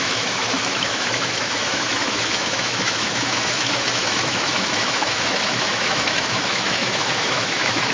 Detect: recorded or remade remade